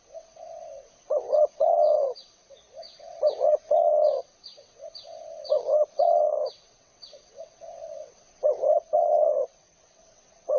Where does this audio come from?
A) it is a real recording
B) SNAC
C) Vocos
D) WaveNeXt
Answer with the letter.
D